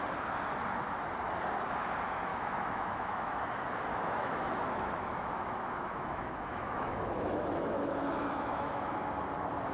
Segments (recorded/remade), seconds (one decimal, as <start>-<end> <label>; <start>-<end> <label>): 0.0-2.3 recorded; 2.3-3.4 remade; 3.4-3.9 recorded; 3.9-8.9 remade; 8.9-9.7 recorded